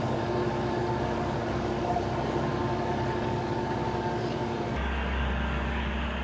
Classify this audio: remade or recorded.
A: remade